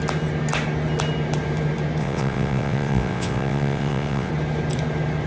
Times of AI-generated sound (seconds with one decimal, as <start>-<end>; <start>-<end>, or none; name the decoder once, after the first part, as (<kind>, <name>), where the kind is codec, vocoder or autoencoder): 2.0-4.3 (vocoder, WaveNeXt)

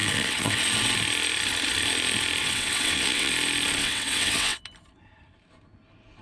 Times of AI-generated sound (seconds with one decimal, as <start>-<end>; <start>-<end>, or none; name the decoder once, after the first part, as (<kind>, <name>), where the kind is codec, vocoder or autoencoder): 0.0-0.6 (vocoder, WaveNeXt); 2.4-3.3; 3.8-4.6

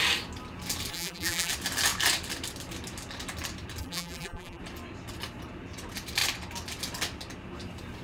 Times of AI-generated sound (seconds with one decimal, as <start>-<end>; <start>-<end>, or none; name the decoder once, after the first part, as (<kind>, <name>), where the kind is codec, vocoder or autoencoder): 0.9-1.5 (vocoder, BigVGAN v2); 3.8-4.6